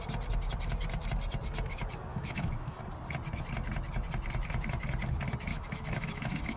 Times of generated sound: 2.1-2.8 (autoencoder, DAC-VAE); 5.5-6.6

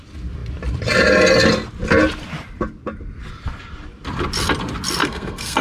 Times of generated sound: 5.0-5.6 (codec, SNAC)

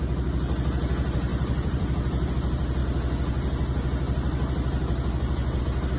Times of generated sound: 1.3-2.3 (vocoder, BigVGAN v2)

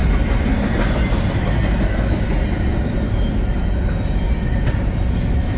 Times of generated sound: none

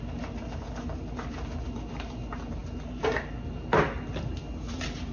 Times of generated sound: none

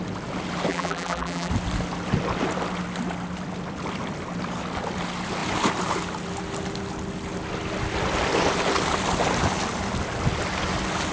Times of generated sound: 0.7-1.5 (vocoder, BigVGAN v2)